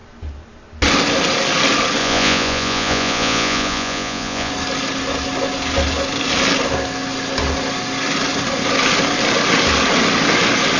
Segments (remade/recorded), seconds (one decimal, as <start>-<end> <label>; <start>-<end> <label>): 0.0-2.0 recorded; 2.0-4.5 remade; 4.5-10.8 recorded